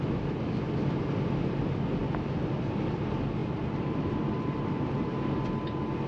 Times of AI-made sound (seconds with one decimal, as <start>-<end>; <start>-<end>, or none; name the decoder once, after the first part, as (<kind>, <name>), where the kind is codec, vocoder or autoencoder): 2.0-2.9 (vocoder, BigVGAN v2); 3.4-4.7